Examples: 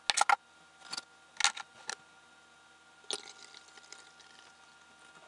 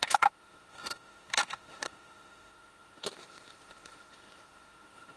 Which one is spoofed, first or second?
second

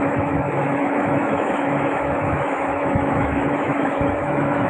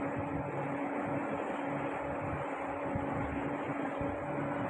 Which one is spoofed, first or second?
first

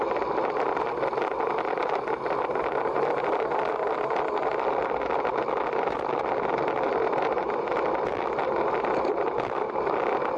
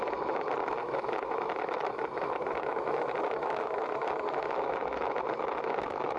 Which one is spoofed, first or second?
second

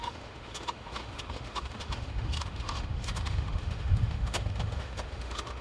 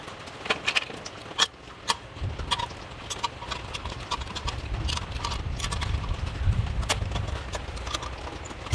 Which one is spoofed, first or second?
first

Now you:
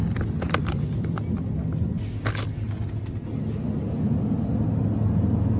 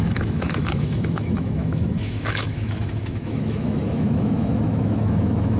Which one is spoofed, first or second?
second